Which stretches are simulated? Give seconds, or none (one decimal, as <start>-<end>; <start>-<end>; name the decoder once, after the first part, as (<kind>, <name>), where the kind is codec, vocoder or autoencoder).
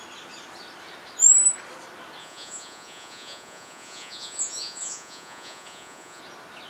2.2-6.2 (vocoder, Vocos)